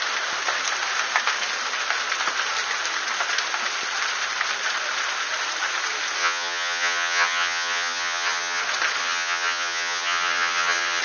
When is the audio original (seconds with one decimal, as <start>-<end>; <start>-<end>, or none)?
0.0-6.2; 8.6-9.0